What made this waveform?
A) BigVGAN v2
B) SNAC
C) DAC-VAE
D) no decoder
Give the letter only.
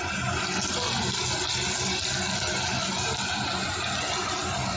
D